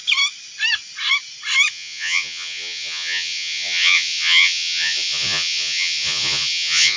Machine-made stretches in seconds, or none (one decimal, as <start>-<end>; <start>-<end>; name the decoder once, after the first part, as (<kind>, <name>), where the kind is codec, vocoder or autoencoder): 1.7-7.0 (vocoder, Vocos)